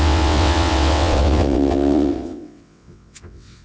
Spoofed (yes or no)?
yes